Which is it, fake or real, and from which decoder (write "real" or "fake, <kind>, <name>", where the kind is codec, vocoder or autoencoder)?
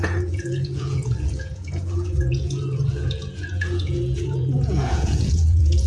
fake, vocoder, Vocos